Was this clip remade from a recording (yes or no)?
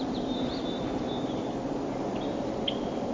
no